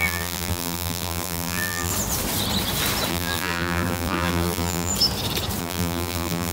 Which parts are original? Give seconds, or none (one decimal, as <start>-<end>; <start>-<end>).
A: 1.9-3.1; 4.9-5.6